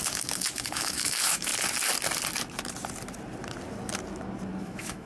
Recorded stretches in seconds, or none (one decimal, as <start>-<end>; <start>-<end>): 1.5-4.6